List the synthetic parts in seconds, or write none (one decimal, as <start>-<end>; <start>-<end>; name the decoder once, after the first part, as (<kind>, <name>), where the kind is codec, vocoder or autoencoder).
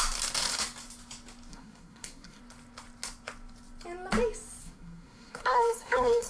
1.5-2.4 (codec, SNAC); 4.6-6.3